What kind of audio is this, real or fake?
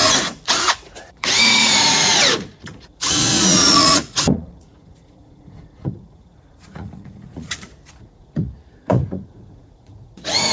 fake